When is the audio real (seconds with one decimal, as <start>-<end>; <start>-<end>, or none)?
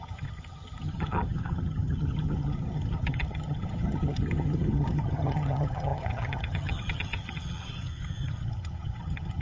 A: none